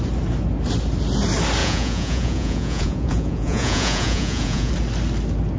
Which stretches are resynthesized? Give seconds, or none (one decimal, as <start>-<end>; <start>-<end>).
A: 1.6-4.7